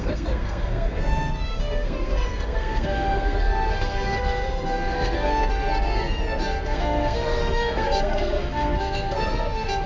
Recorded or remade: remade